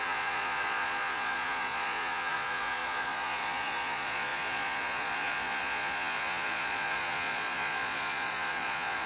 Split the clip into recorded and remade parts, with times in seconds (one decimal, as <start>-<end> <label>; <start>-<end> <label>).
0.0-9.1 remade